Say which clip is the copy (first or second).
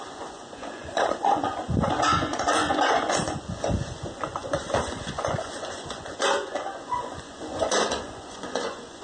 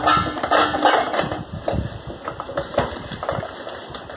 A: first